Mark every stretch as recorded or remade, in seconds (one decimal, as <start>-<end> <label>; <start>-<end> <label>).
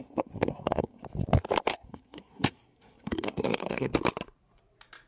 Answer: 0.0-1.0 remade; 1.0-1.7 recorded; 1.7-3.9 remade; 3.9-5.1 recorded